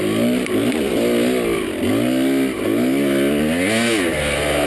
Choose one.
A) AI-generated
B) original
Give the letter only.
B